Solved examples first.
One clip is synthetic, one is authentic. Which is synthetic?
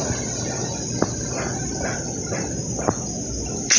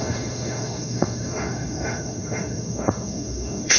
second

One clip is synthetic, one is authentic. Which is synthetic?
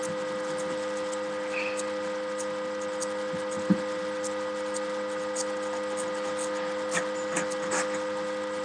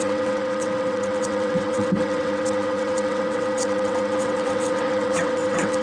second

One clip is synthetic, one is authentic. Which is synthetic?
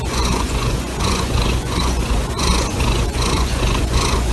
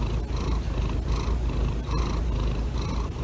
first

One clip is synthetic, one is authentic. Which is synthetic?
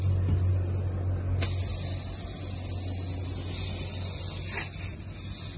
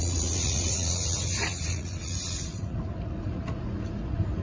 second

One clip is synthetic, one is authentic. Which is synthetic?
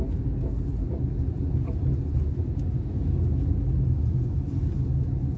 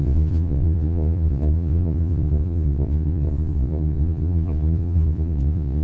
second